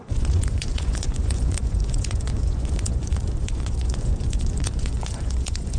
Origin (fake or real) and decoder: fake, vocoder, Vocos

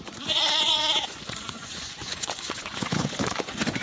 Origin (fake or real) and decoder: fake, vocoder, Vocos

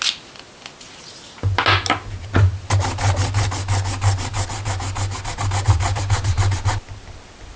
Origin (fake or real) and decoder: real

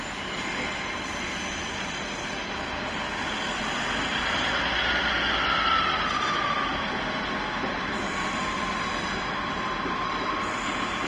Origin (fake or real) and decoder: real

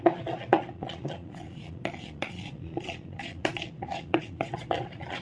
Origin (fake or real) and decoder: fake, vocoder, Vocos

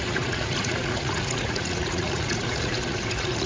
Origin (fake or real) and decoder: fake, vocoder, Vocos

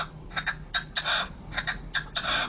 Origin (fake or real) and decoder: real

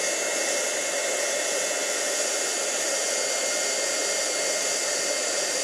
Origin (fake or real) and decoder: real